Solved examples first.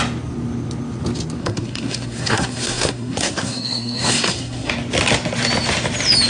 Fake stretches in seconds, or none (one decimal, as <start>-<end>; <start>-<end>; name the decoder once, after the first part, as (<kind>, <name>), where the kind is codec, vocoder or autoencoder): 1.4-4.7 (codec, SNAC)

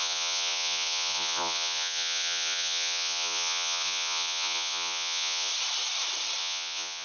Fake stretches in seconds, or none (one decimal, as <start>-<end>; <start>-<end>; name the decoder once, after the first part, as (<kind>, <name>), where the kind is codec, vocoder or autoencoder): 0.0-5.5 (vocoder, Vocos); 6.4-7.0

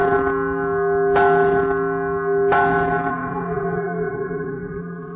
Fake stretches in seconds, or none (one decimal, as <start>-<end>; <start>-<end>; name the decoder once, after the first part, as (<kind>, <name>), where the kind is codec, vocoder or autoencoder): 3.1-5.2 (vocoder, Vocos)

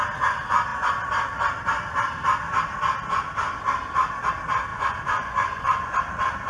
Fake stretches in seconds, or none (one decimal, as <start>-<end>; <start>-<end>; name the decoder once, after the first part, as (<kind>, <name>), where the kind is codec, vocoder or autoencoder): 4.7-6.0 (vocoder, Vocos)

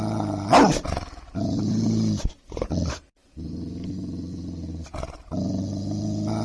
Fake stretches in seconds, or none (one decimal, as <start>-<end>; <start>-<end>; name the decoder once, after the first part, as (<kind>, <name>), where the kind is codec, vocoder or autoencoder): none